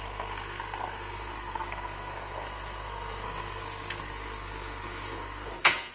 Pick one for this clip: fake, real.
fake